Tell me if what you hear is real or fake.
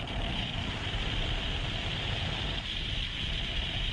fake